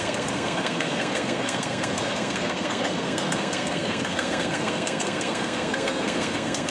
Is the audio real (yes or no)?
no